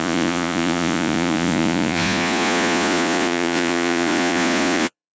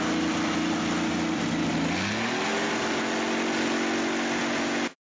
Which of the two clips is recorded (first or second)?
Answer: second